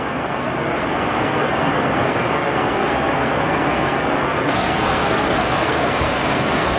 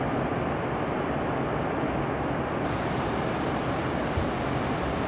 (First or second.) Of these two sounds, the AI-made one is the first